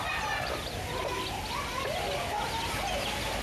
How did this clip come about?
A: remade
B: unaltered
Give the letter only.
B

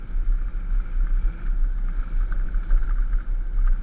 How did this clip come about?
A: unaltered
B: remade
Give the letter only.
A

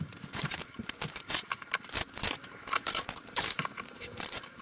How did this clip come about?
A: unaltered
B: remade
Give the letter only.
B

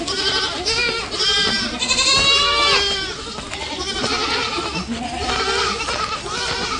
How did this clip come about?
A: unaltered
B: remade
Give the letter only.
A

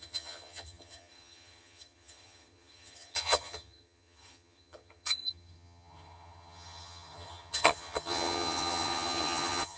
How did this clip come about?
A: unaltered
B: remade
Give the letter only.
B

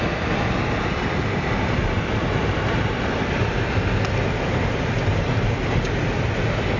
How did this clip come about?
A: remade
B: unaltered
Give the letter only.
B